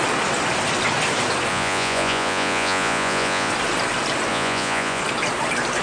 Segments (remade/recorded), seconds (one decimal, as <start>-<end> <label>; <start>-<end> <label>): 0.0-1.5 recorded; 1.5-3.5 remade; 3.5-4.3 recorded; 4.3-5.0 remade; 5.0-5.8 recorded